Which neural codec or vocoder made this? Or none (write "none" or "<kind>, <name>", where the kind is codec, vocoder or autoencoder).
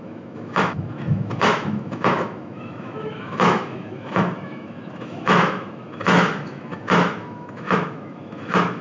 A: autoencoder, DAC-VAE